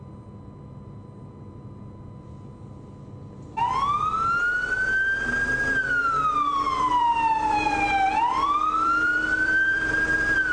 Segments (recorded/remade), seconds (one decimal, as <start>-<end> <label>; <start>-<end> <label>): 0.0-6.0 recorded; 6.0-10.5 remade